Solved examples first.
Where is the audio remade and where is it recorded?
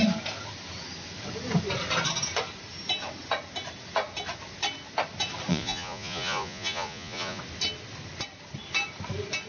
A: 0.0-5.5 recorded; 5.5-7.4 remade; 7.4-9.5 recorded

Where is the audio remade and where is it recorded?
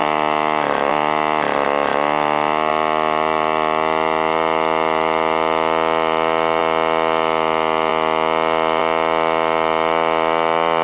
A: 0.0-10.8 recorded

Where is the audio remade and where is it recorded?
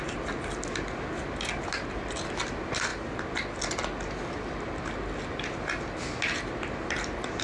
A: 0.0-7.4 recorded